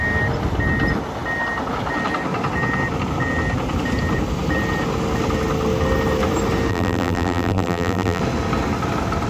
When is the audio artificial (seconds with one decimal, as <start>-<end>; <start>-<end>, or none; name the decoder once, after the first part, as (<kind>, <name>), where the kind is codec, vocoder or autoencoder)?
6.7-8.2 (vocoder, BigVGAN v2)

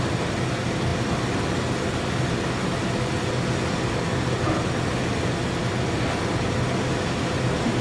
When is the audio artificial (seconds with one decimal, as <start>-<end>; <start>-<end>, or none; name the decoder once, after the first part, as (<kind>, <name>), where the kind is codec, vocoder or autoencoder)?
none

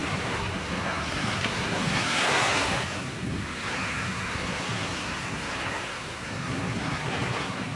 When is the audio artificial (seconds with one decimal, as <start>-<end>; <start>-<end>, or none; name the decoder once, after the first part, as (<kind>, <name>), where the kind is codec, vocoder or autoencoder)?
0.0-7.8 (codec, SNAC)

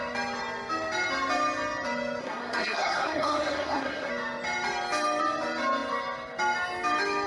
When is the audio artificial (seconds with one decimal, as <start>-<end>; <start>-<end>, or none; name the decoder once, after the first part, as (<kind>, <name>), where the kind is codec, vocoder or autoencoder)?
2.2-4.1 (codec, SNAC)

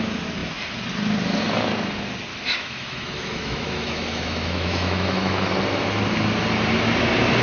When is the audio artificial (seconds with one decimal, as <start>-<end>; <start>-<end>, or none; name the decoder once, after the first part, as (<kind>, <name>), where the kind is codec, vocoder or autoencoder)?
2.3-5.5 (autoencoder, DAC-VAE)

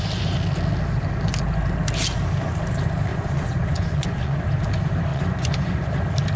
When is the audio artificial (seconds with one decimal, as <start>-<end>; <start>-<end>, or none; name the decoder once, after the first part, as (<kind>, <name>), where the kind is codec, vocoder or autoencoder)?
3.1-4.4 (vocoder, Vocos); 5.1-5.9